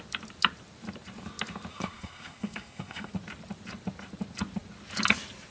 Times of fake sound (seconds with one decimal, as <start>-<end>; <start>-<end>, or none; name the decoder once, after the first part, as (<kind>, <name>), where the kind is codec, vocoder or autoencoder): 1.7-3.1 (codec, SNAC)